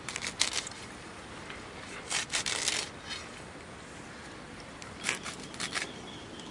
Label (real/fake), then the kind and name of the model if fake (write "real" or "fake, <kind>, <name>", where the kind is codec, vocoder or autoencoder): real